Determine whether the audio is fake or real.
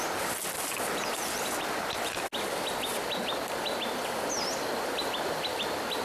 real